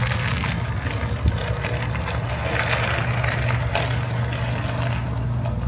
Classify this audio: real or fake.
real